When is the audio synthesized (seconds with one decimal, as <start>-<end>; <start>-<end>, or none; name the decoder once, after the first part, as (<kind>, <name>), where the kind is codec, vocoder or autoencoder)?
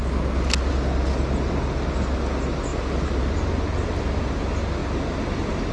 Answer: none